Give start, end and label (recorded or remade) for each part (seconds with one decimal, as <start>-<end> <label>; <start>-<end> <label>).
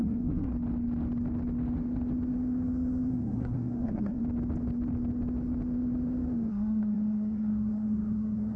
0.0-0.5 remade; 0.5-3.1 recorded; 3.1-4.2 remade; 4.2-6.5 recorded; 6.5-8.6 remade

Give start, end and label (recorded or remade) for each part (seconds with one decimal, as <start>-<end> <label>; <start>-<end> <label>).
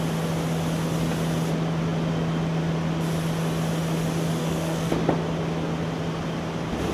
0.0-4.4 recorded; 4.4-4.9 remade; 4.9-6.9 recorded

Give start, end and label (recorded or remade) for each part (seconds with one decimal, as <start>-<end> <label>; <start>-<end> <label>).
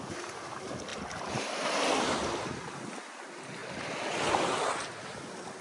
0.0-5.6 recorded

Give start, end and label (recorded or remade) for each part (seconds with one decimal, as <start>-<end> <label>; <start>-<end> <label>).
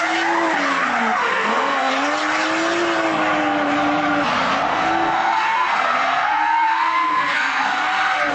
0.0-1.2 recorded; 1.2-1.9 remade; 1.9-4.7 recorded; 4.7-8.3 remade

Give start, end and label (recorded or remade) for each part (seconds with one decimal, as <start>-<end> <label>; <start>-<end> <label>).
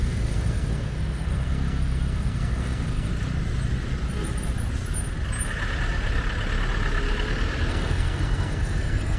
0.0-3.1 remade; 3.1-7.7 recorded; 7.7-9.2 remade